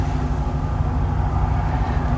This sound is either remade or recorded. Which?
recorded